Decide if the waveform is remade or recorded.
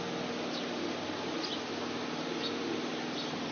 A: recorded